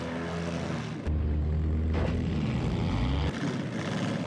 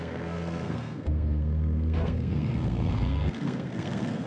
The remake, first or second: second